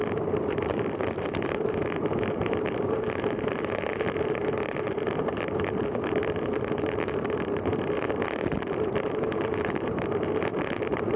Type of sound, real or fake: fake